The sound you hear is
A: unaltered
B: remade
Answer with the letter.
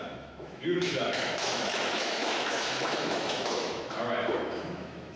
B